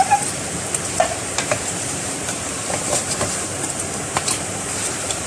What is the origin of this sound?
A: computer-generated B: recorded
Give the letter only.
A